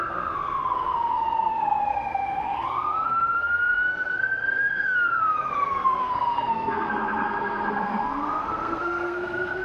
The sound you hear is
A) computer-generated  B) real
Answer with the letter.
A